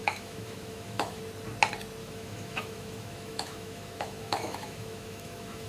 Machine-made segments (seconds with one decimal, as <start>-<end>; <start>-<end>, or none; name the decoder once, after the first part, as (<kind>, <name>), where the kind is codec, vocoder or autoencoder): 0.0-1.2 (autoencoder, DAC-VAE); 2.0-5.7